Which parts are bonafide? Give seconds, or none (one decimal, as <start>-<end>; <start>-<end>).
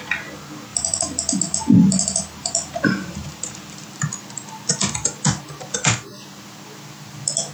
0.0-0.7; 4.1-7.5